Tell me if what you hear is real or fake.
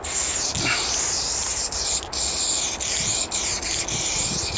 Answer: real